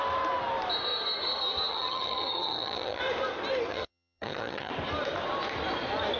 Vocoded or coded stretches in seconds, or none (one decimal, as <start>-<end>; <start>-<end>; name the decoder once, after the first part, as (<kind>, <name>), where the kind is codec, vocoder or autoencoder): 1.7-3.0 (vocoder, HiFi-GAN); 3.7-4.7